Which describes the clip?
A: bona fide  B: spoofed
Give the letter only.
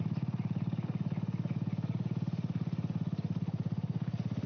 A